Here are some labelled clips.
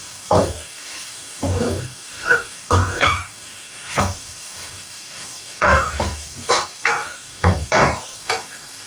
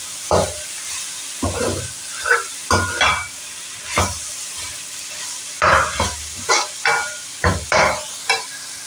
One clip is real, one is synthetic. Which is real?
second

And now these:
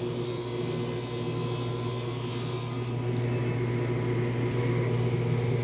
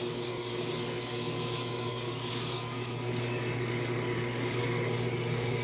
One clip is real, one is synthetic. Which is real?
first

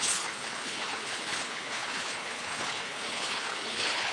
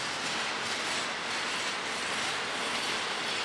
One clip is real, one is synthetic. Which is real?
second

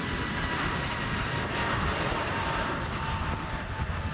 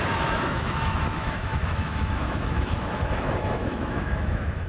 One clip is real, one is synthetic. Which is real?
first